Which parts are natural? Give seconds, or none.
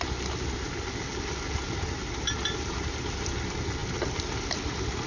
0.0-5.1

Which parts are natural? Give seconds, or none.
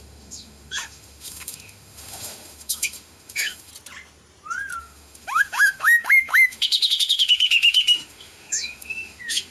3.7-4.8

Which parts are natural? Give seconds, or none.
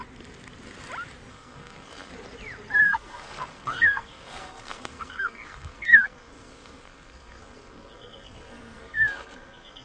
0.0-1.3; 2.1-2.8